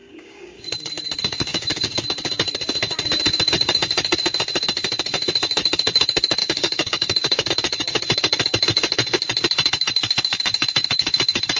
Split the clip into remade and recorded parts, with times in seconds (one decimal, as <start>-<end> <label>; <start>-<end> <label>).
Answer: 0.0-0.9 remade; 0.9-1.5 recorded; 1.5-2.0 remade; 2.0-6.4 recorded; 6.4-7.5 remade; 7.5-11.6 recorded